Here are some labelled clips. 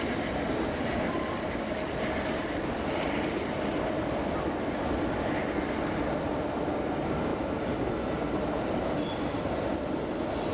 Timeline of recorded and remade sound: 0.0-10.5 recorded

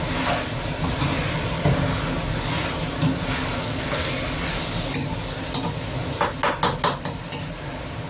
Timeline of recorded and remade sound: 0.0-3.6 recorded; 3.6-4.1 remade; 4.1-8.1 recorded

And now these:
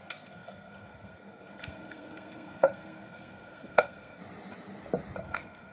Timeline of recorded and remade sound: 0.0-4.2 remade; 4.2-5.2 recorded; 5.2-5.7 remade